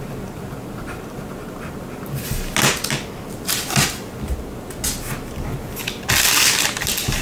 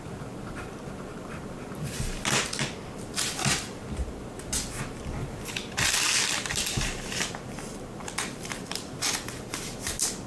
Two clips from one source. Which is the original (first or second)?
first